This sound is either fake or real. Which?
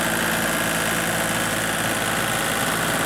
real